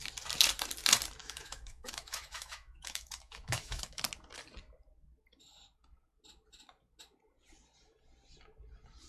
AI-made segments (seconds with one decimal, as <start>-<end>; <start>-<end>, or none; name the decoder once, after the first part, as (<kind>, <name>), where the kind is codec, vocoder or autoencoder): 1.2-4.0 (autoencoder, DAC-VAE)